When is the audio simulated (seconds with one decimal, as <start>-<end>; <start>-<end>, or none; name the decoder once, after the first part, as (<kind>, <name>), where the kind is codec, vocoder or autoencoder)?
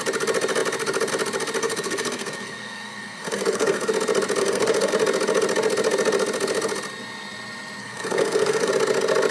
1.6-3.9 (codec, SNAC); 4.4-4.9; 7.8-8.7